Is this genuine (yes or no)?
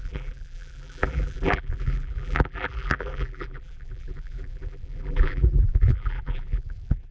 no